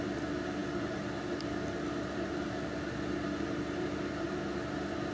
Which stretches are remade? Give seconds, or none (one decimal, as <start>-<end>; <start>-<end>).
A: none